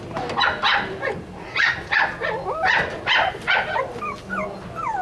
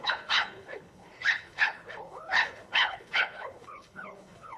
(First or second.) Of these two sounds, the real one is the first